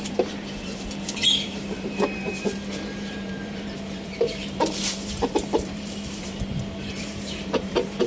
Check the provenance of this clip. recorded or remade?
remade